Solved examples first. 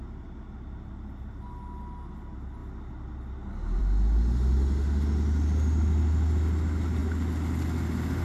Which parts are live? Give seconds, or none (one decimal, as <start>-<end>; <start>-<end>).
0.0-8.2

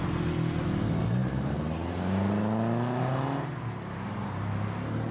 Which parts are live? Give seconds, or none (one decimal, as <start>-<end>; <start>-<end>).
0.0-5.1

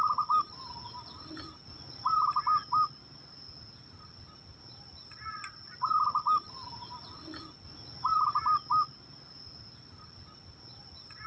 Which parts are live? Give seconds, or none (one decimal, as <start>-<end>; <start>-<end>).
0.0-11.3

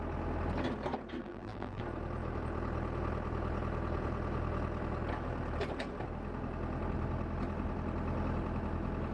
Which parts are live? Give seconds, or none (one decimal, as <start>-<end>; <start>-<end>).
0.0-1.2; 1.8-9.1